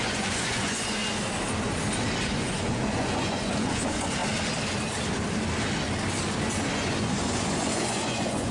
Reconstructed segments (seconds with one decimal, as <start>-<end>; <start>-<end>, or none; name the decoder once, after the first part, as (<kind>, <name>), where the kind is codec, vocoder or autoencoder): 0.0-1.0 (vocoder, Vocos); 2.2-4.2; 6.7-8.5